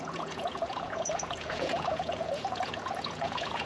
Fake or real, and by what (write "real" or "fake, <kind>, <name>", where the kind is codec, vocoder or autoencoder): fake, vocoder, Vocos